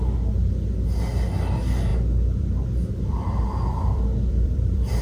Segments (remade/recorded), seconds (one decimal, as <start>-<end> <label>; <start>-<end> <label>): 0.0-1.9 recorded; 1.9-5.0 remade